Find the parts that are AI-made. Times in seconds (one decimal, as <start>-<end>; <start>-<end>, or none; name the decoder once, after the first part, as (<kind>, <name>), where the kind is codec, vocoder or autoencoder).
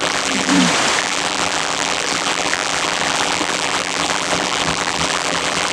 0.0-0.5 (vocoder, BigVGAN v2); 1.0-5.7